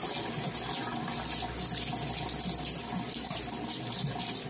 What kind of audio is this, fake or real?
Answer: real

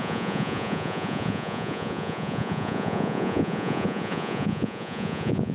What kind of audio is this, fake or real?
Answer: fake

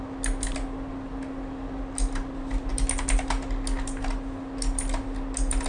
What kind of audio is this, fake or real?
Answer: real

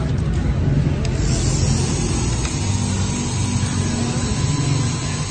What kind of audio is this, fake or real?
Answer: real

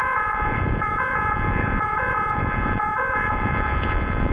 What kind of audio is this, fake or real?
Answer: fake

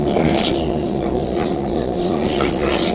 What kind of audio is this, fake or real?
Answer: fake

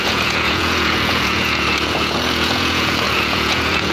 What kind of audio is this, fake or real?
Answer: fake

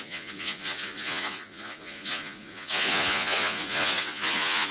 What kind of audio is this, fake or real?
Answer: fake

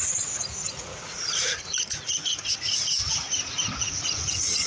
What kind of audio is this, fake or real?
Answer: fake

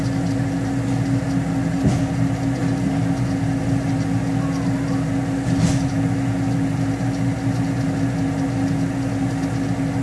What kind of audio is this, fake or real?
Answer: real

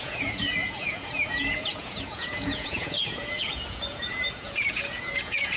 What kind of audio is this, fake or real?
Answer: fake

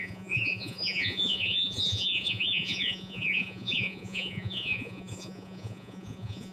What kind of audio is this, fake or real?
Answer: fake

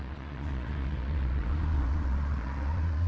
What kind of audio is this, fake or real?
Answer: fake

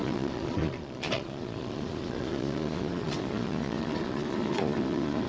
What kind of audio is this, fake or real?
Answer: fake